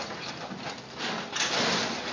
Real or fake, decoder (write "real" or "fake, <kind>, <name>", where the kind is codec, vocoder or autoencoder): real